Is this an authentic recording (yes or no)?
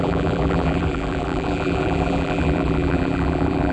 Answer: no